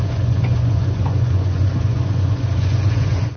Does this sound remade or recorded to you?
remade